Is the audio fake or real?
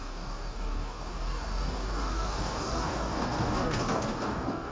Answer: fake